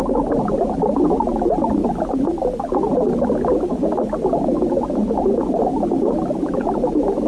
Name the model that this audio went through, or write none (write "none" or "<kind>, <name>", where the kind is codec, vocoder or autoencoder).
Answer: none